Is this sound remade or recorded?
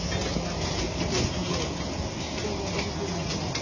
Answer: recorded